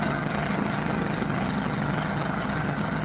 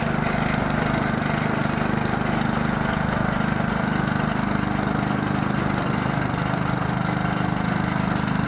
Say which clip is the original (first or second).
second